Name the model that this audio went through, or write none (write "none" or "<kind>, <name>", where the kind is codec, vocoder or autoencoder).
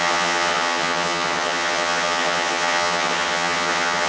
vocoder, HiFi-GAN